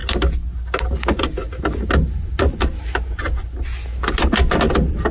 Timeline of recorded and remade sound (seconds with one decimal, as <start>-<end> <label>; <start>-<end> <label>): 0.0-5.1 recorded